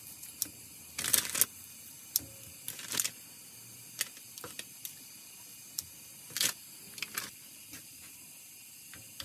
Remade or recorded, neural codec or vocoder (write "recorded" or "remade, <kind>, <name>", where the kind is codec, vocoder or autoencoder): recorded